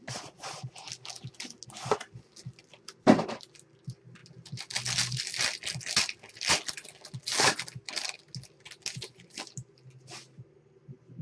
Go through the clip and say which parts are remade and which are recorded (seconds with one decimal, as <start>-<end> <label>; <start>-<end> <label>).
0.0-11.2 recorded